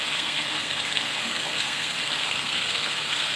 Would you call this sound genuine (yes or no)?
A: no